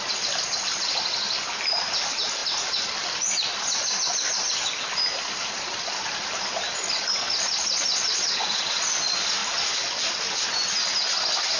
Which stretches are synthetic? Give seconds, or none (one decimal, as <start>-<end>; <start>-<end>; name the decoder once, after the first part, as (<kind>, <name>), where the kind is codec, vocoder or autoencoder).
7.9-8.7 (vocoder, Vocos)